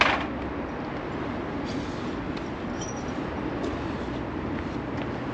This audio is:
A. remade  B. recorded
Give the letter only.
B